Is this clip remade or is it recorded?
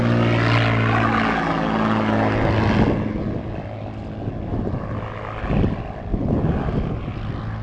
recorded